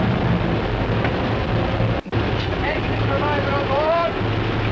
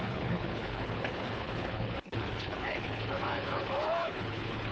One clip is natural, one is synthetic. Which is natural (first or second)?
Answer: first